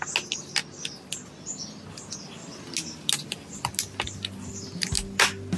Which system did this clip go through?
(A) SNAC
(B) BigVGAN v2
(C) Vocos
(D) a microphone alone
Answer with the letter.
D